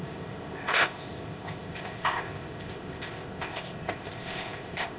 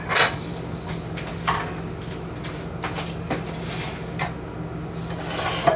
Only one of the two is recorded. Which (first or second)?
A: second